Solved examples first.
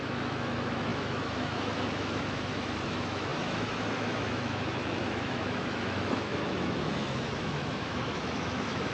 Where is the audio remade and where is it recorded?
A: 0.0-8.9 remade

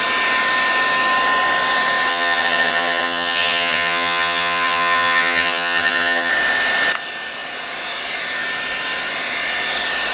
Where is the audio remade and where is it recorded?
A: 0.0-2.1 recorded; 2.1-6.3 remade; 6.3-10.1 recorded

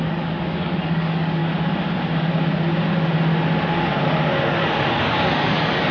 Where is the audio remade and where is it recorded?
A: 0.0-1.4 remade; 1.4-4.9 recorded; 4.9-5.9 remade

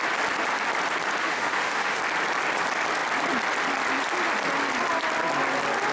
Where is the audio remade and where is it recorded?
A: 0.0-1.2 recorded; 1.2-2.0 remade; 2.0-5.9 recorded

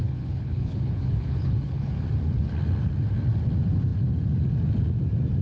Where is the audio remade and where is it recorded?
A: 0.0-1.9 remade; 1.9-5.4 recorded

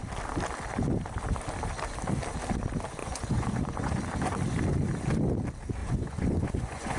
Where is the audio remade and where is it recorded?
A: 0.0-3.0 recorded; 3.0-3.9 remade; 3.9-5.8 recorded; 5.8-7.0 remade

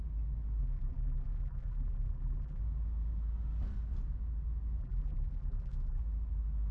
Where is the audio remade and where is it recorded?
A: 0.0-0.6 recorded; 0.6-2.6 remade; 2.6-4.8 recorded; 4.8-6.0 remade; 6.0-6.7 recorded

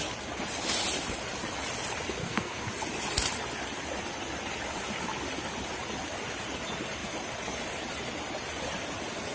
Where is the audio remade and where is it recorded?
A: 0.0-2.2 recorded; 2.2-2.7 remade; 2.7-9.3 recorded